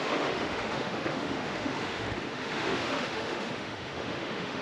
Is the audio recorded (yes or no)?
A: no